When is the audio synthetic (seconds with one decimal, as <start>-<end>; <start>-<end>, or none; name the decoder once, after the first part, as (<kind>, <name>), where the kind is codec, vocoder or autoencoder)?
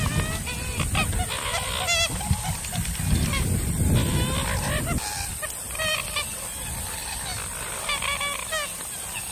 none